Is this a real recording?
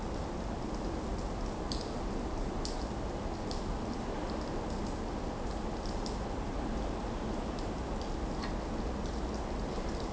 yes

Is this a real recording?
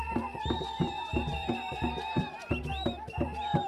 no